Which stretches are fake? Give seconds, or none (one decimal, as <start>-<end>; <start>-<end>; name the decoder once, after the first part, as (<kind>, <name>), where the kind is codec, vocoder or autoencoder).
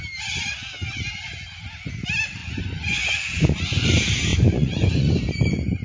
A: 2.4-3.9 (vocoder, Vocos); 4.3-5.2